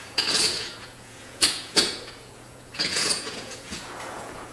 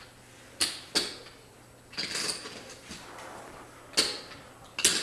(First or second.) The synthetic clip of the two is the first